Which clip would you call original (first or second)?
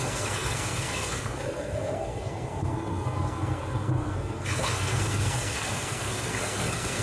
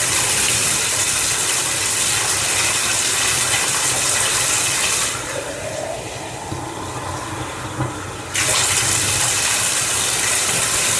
second